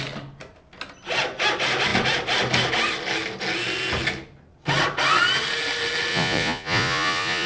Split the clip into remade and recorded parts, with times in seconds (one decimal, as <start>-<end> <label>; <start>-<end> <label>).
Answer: 0.0-6.1 recorded; 6.1-7.5 remade